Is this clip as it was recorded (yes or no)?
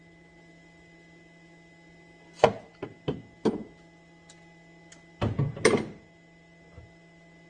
yes